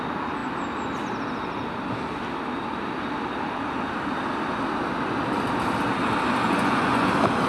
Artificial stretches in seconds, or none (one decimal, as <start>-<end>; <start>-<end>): 6.5-7.1